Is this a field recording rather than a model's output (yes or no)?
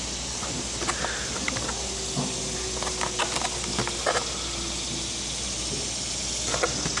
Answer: yes